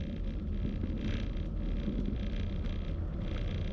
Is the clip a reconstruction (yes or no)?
no